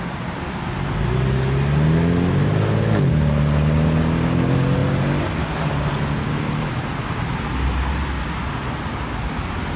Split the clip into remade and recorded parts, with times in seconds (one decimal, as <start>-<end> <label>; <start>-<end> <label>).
0.0-9.8 recorded